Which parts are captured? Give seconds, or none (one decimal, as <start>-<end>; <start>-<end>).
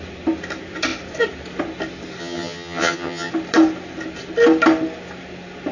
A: 0.0-2.2; 3.3-5.7